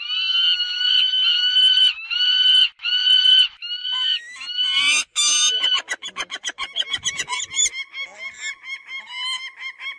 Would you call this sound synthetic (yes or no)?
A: no